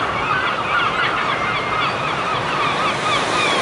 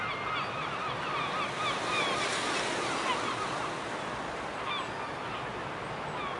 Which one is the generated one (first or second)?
first